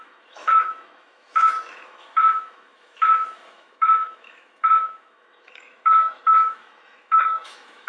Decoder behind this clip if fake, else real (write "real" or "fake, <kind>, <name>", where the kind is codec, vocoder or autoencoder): fake, autoencoder, DAC-VAE